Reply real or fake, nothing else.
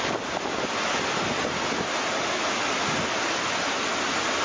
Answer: real